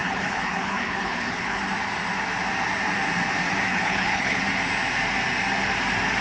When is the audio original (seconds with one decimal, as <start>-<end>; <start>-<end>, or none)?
1.6-3.7; 4.4-6.2